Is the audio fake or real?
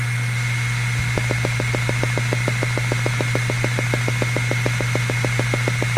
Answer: real